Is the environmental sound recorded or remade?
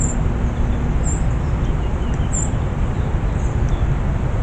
recorded